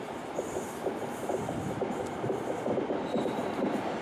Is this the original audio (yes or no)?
yes